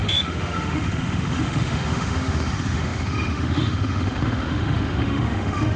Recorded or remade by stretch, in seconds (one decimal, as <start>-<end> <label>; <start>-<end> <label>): 0.0-5.8 remade